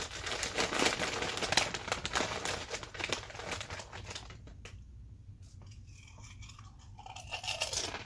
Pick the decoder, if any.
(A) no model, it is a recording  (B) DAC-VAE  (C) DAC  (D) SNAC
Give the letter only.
A